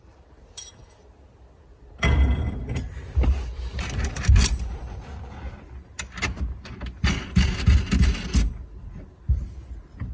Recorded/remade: recorded